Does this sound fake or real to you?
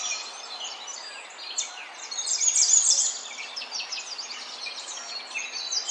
real